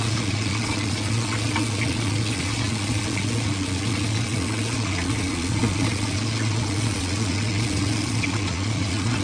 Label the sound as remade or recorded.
remade